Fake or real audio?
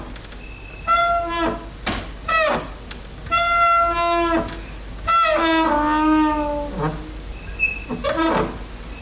real